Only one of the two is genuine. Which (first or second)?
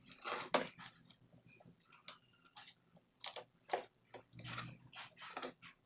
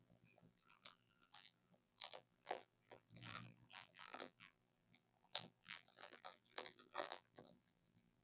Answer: first